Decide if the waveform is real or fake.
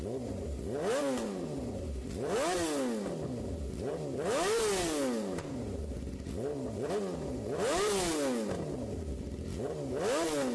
real